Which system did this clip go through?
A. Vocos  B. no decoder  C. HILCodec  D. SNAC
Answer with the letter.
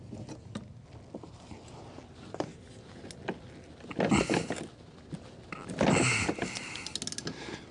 B